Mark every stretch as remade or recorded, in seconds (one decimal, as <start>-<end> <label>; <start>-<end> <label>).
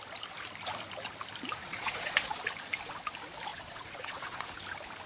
0.0-1.6 recorded; 1.6-2.4 remade; 2.4-3.5 recorded; 3.5-4.5 remade; 4.5-5.1 recorded